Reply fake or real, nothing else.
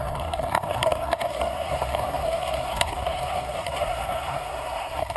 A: fake